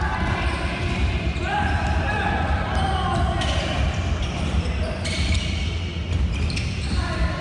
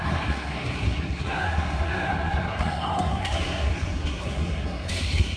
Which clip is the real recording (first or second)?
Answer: first